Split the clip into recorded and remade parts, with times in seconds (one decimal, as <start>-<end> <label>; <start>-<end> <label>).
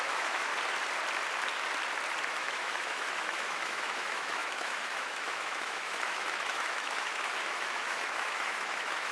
0.0-0.5 remade; 0.5-2.3 recorded; 2.3-9.1 remade